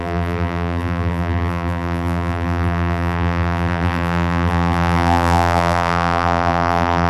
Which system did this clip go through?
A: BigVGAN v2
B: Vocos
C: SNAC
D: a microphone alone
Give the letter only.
A